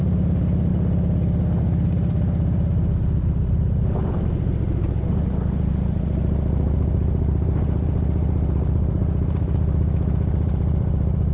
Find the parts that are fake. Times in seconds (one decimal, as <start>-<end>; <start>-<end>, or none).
0.0-0.7; 1.6-11.3